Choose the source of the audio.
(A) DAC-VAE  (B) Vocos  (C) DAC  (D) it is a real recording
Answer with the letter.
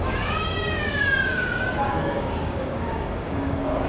C